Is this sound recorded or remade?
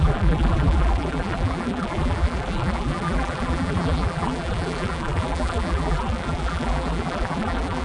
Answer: remade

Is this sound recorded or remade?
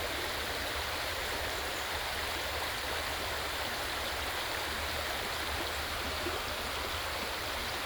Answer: recorded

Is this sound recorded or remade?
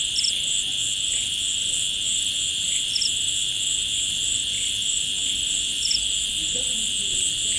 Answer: recorded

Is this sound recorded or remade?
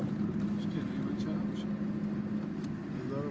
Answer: recorded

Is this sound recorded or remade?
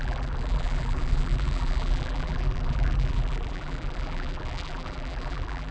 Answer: remade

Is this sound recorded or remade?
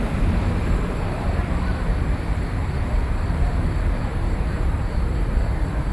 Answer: remade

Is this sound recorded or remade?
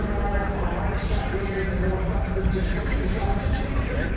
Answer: remade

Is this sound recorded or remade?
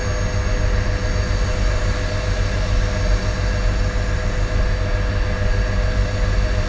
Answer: recorded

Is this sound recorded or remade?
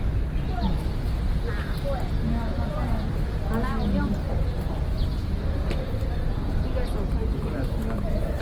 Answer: recorded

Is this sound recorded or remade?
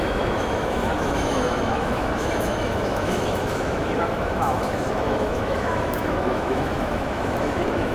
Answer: remade